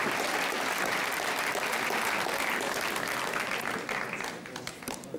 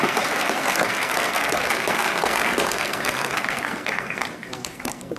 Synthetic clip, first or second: second